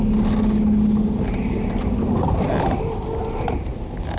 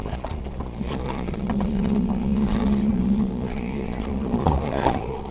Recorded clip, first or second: first